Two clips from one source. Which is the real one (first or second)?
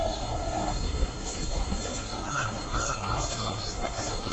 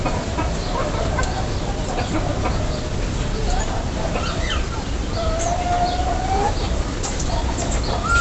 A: second